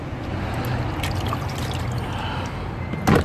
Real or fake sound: real